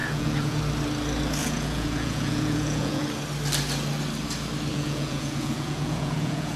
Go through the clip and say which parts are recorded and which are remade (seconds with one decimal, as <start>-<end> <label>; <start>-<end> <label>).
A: 0.0-0.6 remade; 0.6-1.4 recorded; 1.4-3.0 remade; 3.0-4.7 recorded; 4.7-6.6 remade